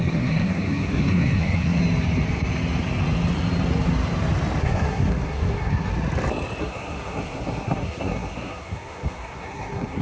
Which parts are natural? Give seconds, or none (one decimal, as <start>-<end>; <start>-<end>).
1.8-4.6; 5.9-6.6